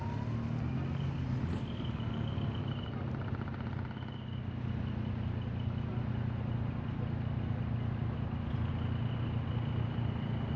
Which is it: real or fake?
real